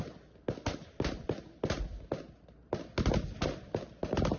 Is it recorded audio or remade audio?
recorded